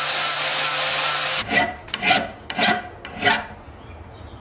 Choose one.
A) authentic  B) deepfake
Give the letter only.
A